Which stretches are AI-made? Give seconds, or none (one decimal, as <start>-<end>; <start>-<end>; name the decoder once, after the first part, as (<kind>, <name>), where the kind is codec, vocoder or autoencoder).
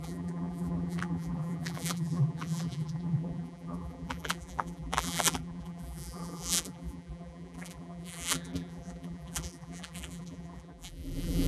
0.0-11.5 (vocoder, BigVGAN v2)